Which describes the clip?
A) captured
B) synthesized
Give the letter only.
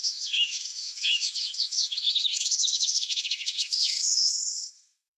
B